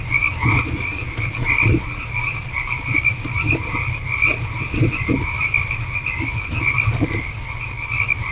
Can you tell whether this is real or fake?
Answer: fake